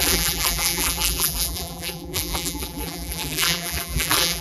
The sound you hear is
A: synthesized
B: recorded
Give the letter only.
A